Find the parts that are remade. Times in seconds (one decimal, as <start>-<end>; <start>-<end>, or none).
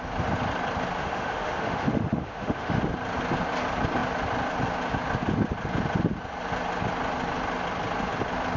1.0-2.8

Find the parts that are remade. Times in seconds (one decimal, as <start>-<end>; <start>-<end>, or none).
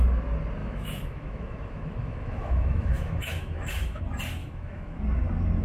0.6-4.0; 4.4-5.0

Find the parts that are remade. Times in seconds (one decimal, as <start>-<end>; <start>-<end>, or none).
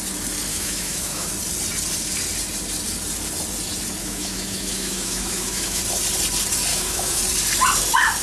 0.5-1.3; 4.0-5.8; 6.7-7.2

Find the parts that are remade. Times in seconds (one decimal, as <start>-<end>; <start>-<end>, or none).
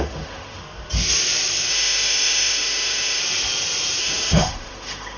0.0-0.6; 1.7-3.2; 4.0-5.2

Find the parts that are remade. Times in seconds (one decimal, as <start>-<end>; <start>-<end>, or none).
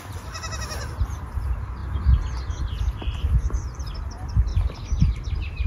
none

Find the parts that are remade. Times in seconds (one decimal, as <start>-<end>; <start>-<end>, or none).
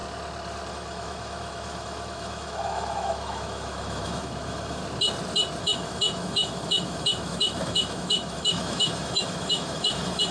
0.7-4.8; 5.6-10.3